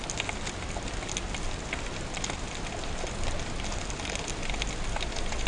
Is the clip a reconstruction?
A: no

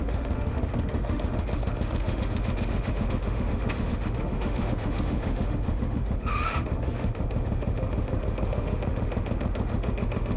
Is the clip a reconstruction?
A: yes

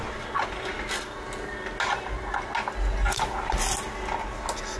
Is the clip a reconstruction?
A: no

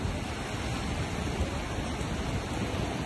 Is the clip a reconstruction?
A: no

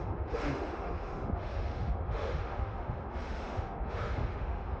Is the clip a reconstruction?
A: yes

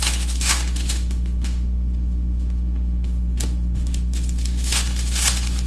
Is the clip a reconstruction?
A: yes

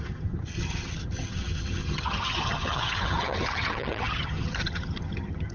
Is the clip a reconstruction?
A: yes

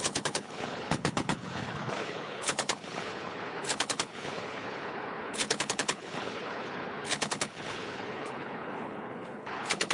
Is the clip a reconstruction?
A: yes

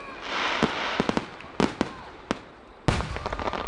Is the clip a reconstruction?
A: no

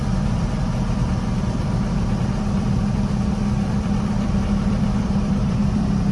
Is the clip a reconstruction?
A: yes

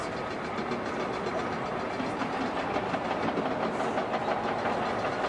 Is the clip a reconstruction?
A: no